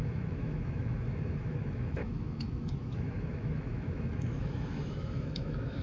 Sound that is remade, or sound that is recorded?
remade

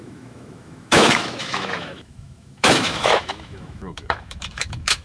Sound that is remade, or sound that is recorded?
remade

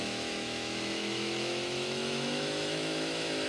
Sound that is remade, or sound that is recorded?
remade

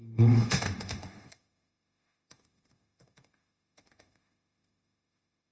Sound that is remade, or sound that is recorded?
remade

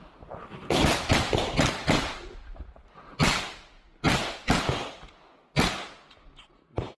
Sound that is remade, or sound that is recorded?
recorded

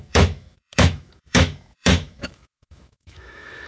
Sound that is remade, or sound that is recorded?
remade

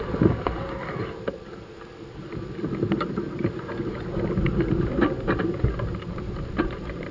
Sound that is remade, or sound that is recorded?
recorded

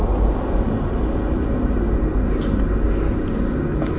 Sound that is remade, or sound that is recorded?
recorded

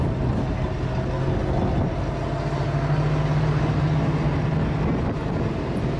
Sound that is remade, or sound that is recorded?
recorded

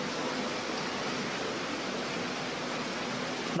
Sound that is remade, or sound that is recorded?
recorded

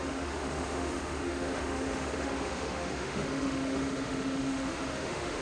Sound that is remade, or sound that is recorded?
remade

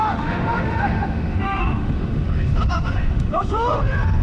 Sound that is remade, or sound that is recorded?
remade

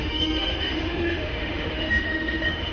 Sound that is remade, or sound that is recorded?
remade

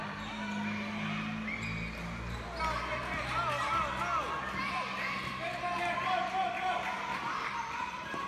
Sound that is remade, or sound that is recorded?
recorded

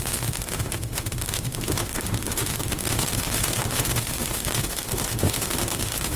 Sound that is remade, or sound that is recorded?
remade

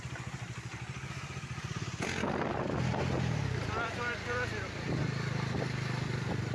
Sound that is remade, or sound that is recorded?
recorded